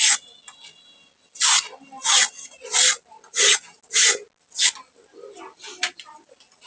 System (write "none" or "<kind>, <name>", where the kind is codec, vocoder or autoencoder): none